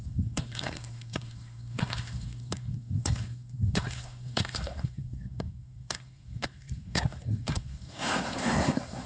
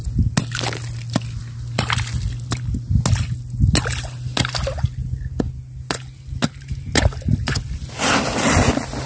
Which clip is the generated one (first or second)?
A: first